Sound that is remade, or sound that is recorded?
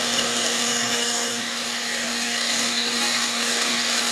remade